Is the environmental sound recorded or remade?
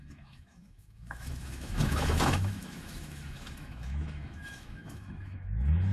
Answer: remade